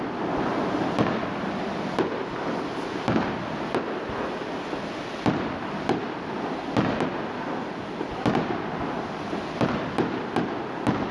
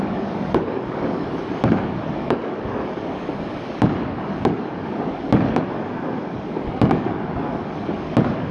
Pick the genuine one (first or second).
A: first